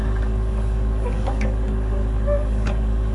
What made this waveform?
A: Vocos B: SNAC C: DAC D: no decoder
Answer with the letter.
C